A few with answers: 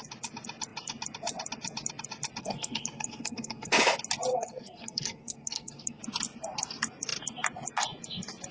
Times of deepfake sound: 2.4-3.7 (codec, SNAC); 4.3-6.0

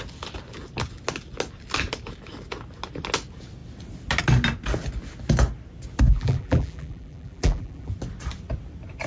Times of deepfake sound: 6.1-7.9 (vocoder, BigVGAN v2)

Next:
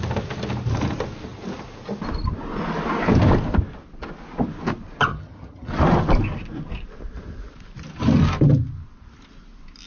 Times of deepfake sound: 5.1-5.7 (vocoder, HiFi-GAN)

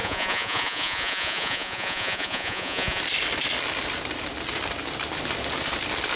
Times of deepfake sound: 0.0-3.0 (vocoder, Vocos)

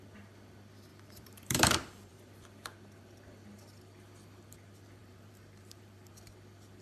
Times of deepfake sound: 0.9-2.2 (vocoder, BigVGAN v2); 5.0-6.1

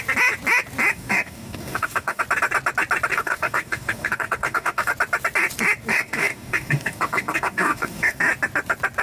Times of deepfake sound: 0.9-2.2 (codec, DAC); 3.1-4.9; 5.9-8.2

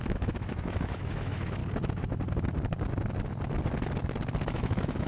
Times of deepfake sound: 0.0-1.6 (autoencoder, DAC-VAE); 4.5-5.1